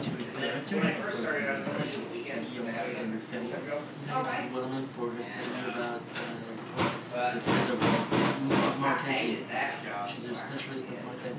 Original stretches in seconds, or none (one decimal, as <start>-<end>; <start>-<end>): 0.0-11.4

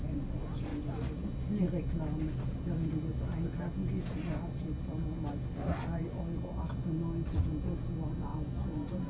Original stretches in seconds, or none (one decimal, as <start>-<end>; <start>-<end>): 0.0-9.1